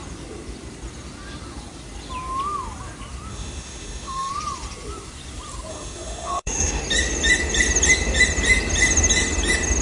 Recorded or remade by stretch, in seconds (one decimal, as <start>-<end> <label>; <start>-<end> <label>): 0.0-3.3 recorded; 3.3-4.3 remade; 4.3-5.7 recorded; 5.7-6.8 remade; 6.8-9.8 recorded